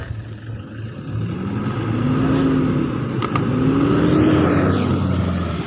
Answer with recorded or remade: recorded